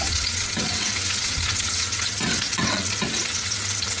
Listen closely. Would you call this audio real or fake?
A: fake